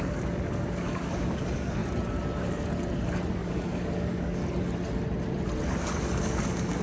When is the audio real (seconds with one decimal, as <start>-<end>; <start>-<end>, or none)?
1.8-3.3; 4.4-5.7